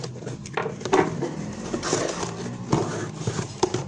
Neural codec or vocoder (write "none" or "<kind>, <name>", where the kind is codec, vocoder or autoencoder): none